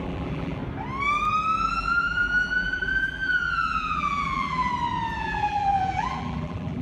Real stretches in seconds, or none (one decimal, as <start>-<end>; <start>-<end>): 0.6-1.6; 4.7-5.2